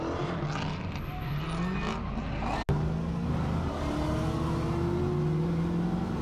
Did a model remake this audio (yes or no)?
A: no